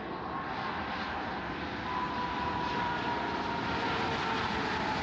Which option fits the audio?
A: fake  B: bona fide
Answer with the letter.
B